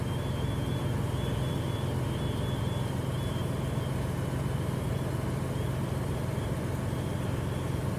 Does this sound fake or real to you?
real